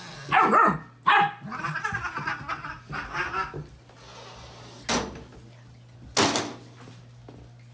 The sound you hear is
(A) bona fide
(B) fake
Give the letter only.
A